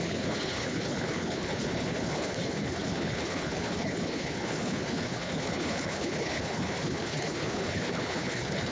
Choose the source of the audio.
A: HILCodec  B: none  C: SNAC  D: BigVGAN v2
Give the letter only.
A